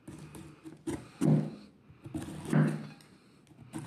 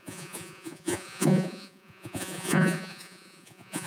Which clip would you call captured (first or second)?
first